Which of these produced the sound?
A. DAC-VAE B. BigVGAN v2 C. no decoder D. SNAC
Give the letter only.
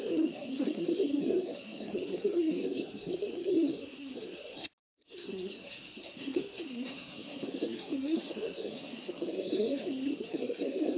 D